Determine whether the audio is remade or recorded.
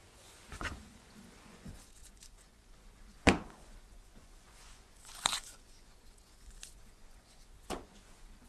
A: remade